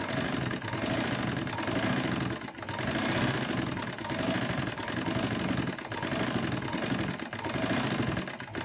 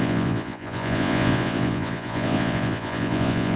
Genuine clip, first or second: first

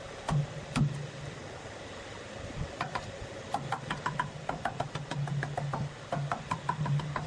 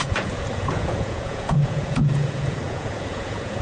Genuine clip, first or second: first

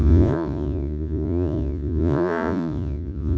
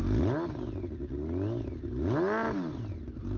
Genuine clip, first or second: second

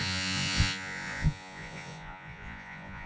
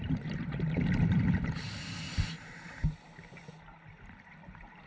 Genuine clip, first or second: second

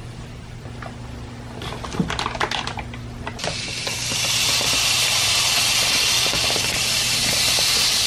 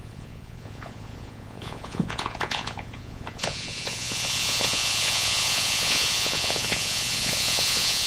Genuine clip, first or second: first